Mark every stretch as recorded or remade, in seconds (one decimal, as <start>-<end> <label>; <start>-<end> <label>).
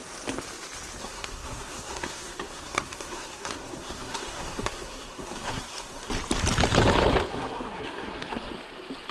0.0-1.0 recorded; 1.0-6.1 remade; 6.1-7.3 recorded; 7.3-8.5 remade; 8.5-9.1 recorded